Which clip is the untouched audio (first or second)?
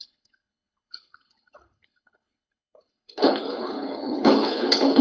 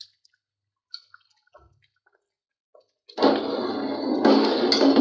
second